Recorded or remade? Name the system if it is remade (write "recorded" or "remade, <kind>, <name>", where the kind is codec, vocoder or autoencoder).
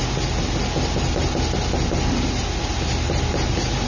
recorded